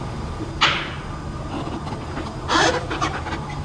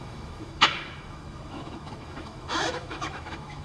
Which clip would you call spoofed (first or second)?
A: second